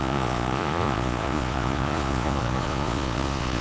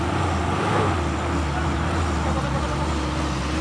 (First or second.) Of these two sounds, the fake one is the first